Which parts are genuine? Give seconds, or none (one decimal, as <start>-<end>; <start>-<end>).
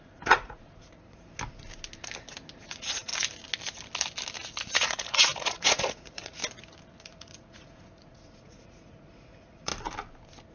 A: 1.3-2.6; 3.1-4.7; 6.4-7.0; 9.7-10.5